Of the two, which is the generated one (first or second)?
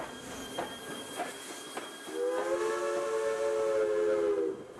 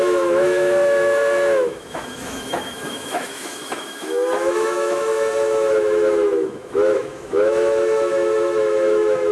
second